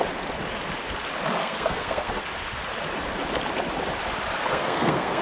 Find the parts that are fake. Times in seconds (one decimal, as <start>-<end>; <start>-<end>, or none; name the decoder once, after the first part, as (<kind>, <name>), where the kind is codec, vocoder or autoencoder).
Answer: 1.4-2.2 (codec, SNAC); 4.5-5.2